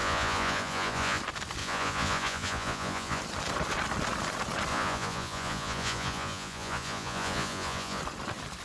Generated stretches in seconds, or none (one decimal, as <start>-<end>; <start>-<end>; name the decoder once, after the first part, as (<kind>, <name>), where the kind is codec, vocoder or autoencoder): 0.0-1.2 (vocoder, Vocos); 1.6-3.2; 4.7-8.0